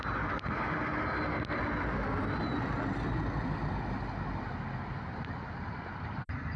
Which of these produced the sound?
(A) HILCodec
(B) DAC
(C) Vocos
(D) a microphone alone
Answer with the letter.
D